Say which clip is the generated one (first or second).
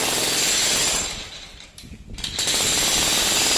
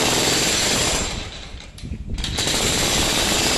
second